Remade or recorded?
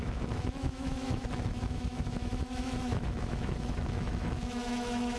remade